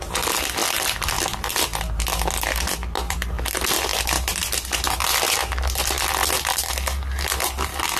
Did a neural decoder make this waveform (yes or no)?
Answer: no